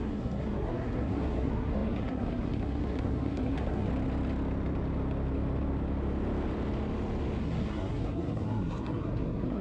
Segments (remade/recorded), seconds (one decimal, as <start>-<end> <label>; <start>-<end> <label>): 0.0-3.9 remade; 3.9-7.4 recorded; 7.4-9.6 remade